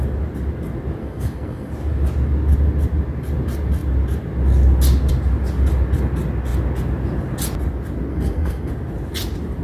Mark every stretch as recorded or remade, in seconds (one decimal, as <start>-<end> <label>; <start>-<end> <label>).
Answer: 0.0-1.0 recorded; 1.0-1.7 remade; 1.7-8.1 recorded; 8.1-8.7 remade; 8.7-9.6 recorded